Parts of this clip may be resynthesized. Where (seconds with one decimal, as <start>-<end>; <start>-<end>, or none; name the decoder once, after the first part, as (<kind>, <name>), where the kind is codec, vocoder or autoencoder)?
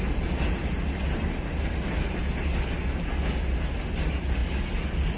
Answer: none